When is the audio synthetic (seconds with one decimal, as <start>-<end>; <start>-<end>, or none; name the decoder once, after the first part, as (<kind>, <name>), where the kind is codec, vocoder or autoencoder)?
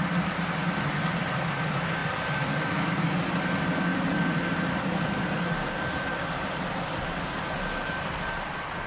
0.6-1.5 (vocoder, BigVGAN v2); 2.0-2.6; 3.9-7.2